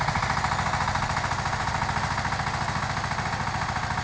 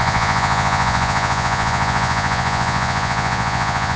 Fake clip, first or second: second